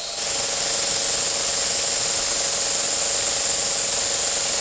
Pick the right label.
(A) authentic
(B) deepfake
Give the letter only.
A